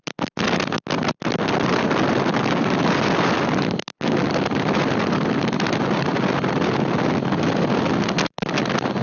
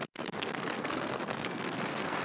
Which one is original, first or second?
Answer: first